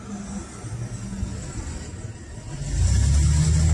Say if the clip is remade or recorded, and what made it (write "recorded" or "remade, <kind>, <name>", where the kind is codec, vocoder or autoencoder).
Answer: recorded